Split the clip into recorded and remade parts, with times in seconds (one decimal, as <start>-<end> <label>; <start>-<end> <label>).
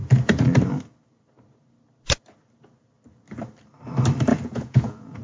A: 0.0-4.3 recorded; 4.3-5.2 remade